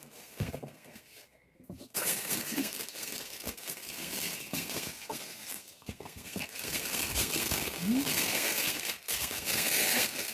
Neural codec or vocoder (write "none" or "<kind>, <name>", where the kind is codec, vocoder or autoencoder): codec, SNAC